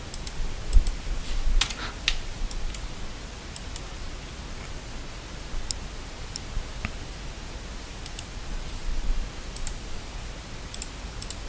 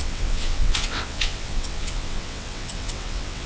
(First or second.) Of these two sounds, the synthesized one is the second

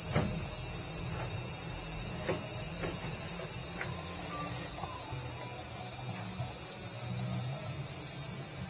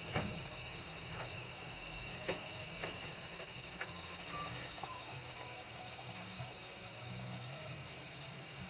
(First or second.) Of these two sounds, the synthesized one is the second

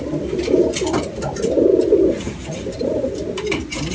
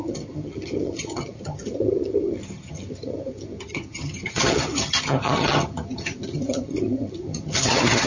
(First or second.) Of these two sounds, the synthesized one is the second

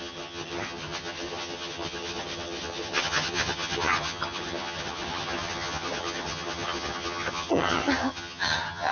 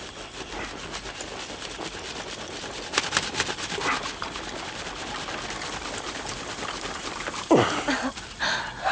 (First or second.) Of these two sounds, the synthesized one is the first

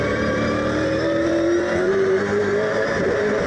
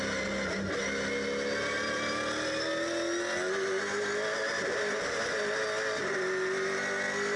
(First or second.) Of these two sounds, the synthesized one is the first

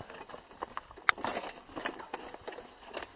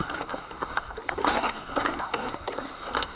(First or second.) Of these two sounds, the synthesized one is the second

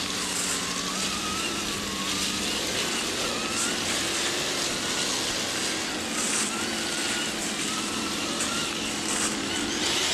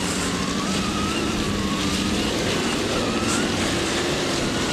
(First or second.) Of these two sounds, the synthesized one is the second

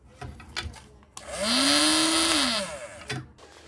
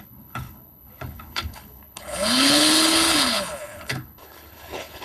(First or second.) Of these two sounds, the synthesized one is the second